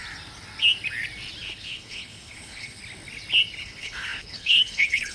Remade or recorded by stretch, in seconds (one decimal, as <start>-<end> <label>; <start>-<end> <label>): 0.0-1.5 recorded; 1.5-2.8 remade; 2.8-3.6 recorded; 3.6-5.1 remade